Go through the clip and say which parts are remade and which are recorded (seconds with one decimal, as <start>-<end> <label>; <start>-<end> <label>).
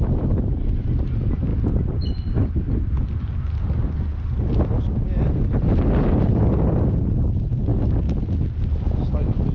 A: 0.0-1.5 recorded; 1.5-2.5 remade; 2.5-9.5 recorded